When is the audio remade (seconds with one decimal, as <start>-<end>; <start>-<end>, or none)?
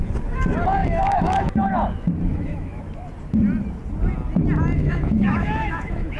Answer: 0.8-1.5; 2.3-2.8; 4.8-6.2